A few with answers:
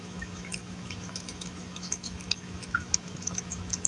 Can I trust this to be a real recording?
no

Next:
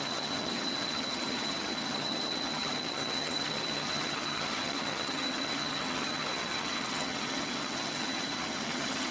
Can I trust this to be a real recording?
no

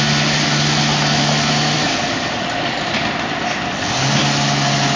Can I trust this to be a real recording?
yes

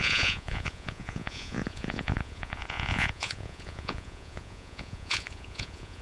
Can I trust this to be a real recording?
no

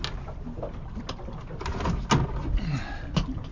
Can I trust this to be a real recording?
yes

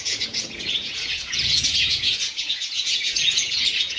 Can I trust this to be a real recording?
no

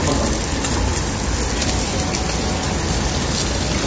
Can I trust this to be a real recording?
yes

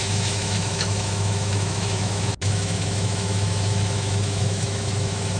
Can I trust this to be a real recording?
no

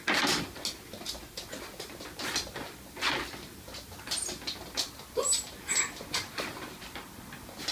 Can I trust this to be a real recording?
yes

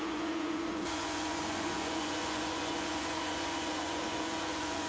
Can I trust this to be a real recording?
no